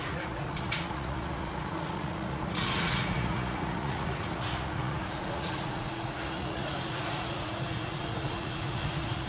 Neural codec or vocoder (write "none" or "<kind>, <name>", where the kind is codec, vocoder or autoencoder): vocoder, Vocos